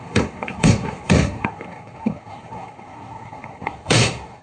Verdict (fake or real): fake